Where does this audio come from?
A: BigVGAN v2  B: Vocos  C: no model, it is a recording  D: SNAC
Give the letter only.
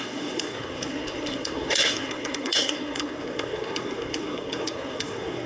D